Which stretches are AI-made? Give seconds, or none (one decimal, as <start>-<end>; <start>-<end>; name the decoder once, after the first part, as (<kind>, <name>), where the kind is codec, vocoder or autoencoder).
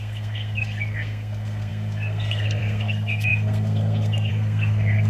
0.0-5.1 (codec, SNAC)